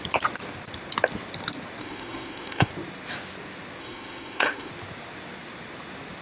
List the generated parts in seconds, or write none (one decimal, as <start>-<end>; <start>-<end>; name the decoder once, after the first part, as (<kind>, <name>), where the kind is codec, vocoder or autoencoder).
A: 1.8-2.7 (autoencoder, DAC-VAE); 3.8-4.7